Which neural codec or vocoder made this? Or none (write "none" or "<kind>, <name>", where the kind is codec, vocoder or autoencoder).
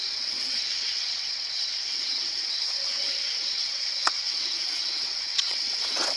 vocoder, WaveNeXt